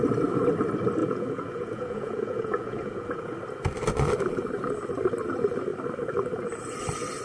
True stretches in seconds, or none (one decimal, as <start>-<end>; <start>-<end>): 0.0-1.0; 3.3-7.2

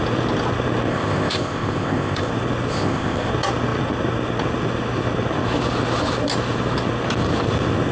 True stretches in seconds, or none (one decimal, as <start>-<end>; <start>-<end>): 0.0-0.9; 2.3-2.7; 3.3-7.9

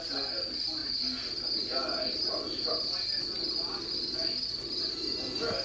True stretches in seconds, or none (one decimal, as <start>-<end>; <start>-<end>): 0.0-0.8; 2.7-5.6

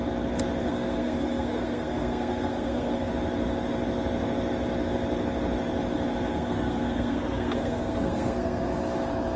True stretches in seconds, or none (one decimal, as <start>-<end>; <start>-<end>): 0.0-0.6; 3.1-6.3; 8.8-9.4